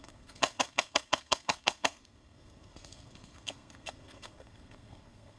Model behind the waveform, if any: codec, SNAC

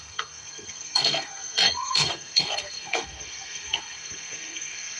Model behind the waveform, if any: codec, SNAC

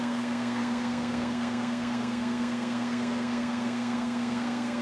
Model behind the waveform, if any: codec, SNAC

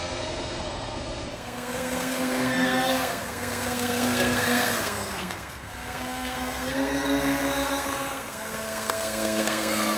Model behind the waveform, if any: codec, SNAC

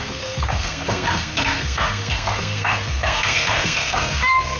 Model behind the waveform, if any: codec, SNAC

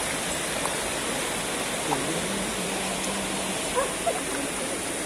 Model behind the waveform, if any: none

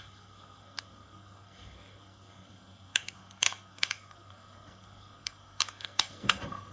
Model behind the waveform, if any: codec, SNAC